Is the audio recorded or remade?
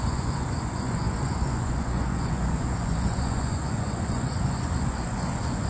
remade